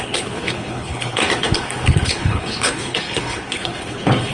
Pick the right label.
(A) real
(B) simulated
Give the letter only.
B